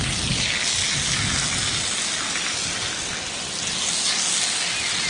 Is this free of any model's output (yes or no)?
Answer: yes